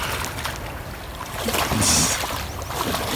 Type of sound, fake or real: real